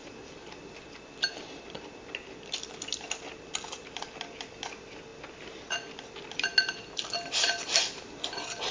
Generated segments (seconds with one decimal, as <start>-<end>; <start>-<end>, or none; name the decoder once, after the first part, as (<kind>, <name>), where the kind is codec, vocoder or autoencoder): none